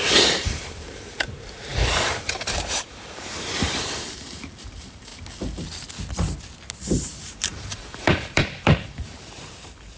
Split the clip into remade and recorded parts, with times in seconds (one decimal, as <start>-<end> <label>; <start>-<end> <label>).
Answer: 0.0-5.1 remade; 5.1-6.7 recorded; 6.7-10.0 remade